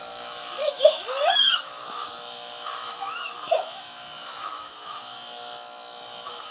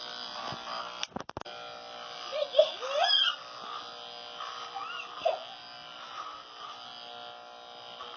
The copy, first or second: first